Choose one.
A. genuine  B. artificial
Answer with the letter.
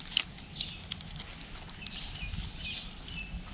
A